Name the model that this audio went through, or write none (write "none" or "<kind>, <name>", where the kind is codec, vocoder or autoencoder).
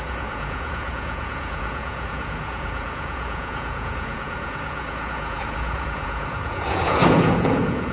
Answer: vocoder, Vocos